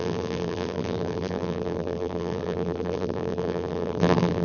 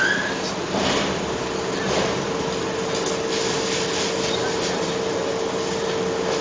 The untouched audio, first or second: second